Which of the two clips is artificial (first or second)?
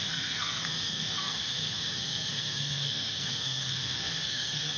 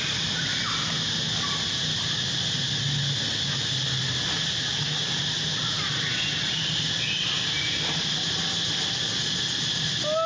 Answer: first